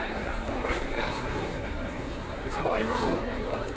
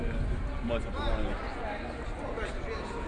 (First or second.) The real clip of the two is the second